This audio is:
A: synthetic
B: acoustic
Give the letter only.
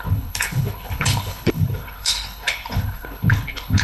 A